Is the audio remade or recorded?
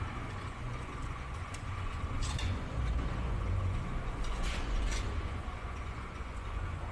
remade